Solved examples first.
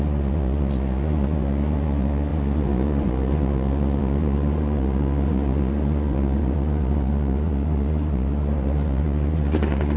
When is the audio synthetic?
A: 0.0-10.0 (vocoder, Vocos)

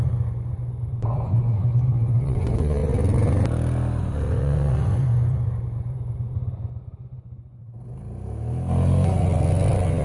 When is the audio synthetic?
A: 0.0-2.8 (vocoder, Vocos); 4.0-7.6

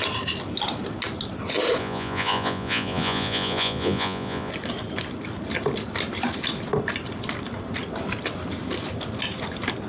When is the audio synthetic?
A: 1.8-4.5 (vocoder, Vocos)

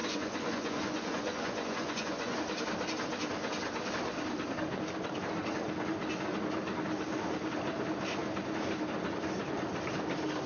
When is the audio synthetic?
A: 0.0-2.4 (vocoder, Vocos)

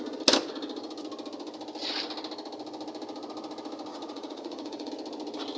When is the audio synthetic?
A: 3.9-4.9 (vocoder, Vocos)

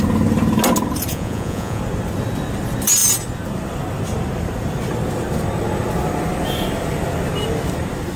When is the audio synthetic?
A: 1.1-1.8 (vocoder, Vocos)